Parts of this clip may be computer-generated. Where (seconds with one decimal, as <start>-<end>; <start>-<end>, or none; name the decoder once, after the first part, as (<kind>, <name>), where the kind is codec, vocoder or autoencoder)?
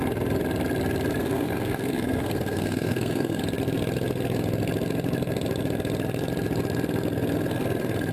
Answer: 1.2-3.4 (codec, SNAC)